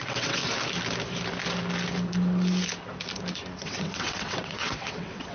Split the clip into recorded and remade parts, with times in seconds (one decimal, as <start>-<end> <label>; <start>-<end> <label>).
0.0-0.4 remade; 0.4-3.6 recorded; 3.6-5.3 remade

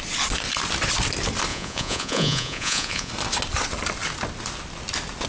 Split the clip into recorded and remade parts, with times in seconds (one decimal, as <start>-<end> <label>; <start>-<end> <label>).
0.0-1.5 recorded; 1.5-3.1 remade; 3.1-5.3 recorded

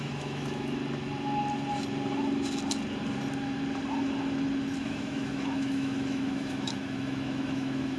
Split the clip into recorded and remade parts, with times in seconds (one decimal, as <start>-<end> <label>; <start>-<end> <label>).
0.0-0.8 remade; 0.8-4.8 recorded; 4.8-8.0 remade

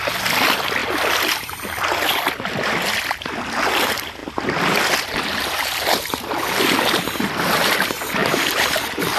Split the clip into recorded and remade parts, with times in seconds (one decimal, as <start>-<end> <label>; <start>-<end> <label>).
0.0-0.8 recorded; 0.8-2.3 remade; 2.3-8.2 recorded; 8.2-9.2 remade

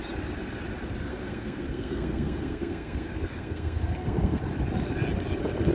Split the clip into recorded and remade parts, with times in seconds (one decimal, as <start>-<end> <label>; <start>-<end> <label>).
0.0-1.1 recorded; 1.1-4.4 remade; 4.4-5.7 recorded

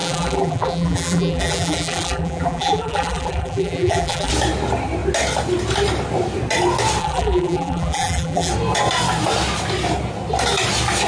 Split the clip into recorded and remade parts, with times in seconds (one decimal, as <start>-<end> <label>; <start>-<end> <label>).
0.0-4.3 remade; 4.3-7.0 recorded; 7.0-8.5 remade; 8.5-11.1 recorded

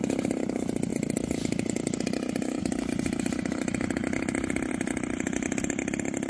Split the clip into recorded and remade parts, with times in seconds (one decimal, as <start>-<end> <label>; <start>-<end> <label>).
0.0-6.3 recorded